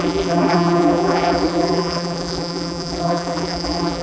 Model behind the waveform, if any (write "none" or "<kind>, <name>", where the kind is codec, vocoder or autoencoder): vocoder, BigVGAN v2